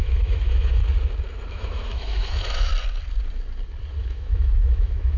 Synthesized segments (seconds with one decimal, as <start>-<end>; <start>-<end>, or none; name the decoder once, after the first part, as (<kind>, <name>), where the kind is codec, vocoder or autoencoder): 0.0-0.8 (autoencoder, DAC-VAE); 1.5-2.7; 4.0-5.2